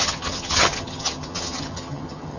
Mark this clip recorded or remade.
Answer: remade